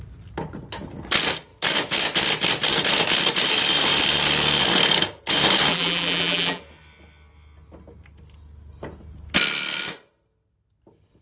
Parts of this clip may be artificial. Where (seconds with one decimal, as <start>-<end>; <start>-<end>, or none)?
5.7-6.6